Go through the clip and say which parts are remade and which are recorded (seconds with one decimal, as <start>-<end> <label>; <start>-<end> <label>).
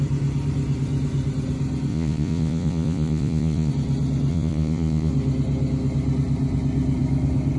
0.0-1.9 recorded; 1.9-3.7 remade; 3.7-4.3 recorded; 4.3-5.1 remade; 5.1-7.6 recorded